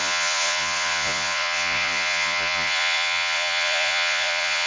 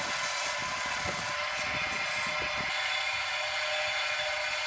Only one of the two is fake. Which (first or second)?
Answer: first